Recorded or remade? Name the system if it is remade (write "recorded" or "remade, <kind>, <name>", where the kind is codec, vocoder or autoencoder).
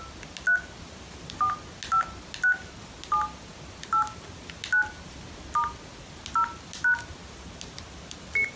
recorded